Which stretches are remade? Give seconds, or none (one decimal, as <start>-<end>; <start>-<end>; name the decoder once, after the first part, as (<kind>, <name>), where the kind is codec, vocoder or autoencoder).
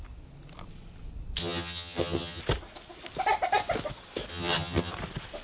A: 1.4-2.4 (vocoder, HiFi-GAN); 4.3-4.9